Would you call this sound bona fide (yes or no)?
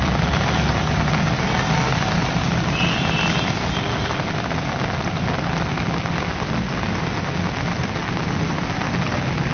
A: yes